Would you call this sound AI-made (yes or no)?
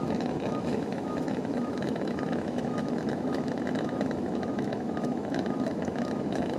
yes